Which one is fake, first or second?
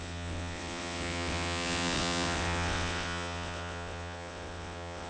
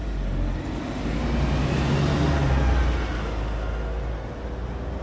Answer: first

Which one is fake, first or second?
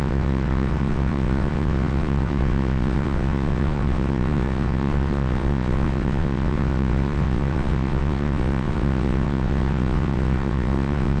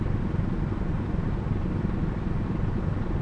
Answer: first